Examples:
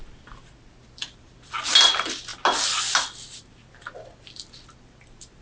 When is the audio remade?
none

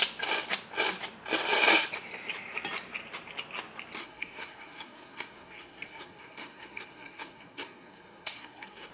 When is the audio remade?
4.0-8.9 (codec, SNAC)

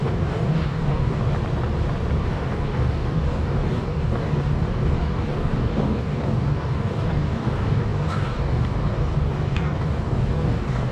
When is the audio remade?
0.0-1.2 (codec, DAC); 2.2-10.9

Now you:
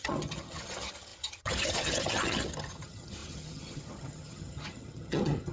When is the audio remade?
0.0-5.5 (vocoder, HiFi-GAN)

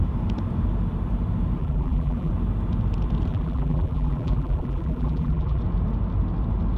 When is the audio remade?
1.6-2.3 (vocoder, BigVGAN v2); 3.3-5.6

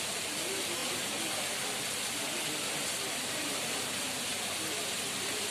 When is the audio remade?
none

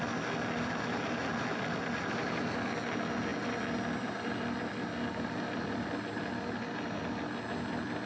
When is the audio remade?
none